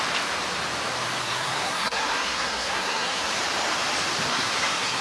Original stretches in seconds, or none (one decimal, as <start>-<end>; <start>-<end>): 0.0-1.2; 3.4-4.3